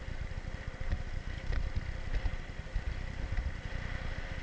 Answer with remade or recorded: recorded